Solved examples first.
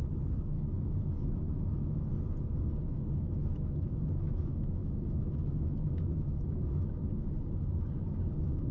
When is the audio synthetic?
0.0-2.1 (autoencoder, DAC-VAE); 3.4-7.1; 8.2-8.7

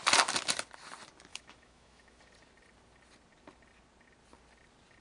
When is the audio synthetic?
1.3-2.2 (autoencoder, DAC-VAE)

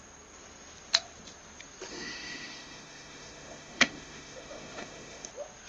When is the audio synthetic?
1.9-5.3 (autoencoder, DAC-VAE)

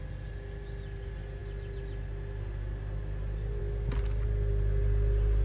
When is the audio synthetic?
none

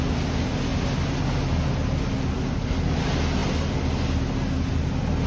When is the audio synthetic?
none